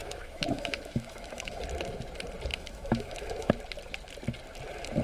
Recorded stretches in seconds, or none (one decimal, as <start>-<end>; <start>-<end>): 1.6-2.5; 3.5-5.0